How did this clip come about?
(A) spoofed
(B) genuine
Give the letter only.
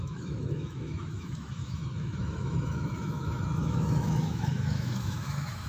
A